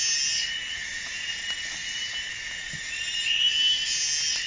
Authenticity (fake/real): real